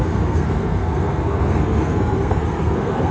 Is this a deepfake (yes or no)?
yes